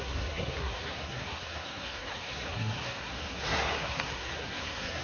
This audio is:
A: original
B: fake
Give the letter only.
B